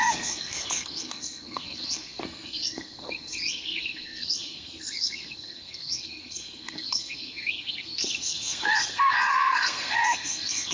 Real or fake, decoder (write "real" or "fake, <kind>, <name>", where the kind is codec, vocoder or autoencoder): fake, codec, SNAC